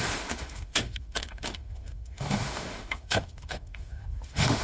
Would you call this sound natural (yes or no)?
no